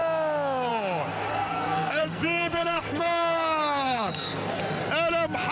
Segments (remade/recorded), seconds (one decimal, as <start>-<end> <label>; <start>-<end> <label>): 0.0-1.3 recorded; 1.3-4.6 remade; 4.6-5.5 recorded